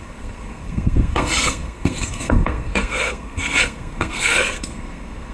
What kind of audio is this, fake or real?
fake